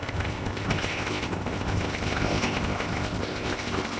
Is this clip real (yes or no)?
no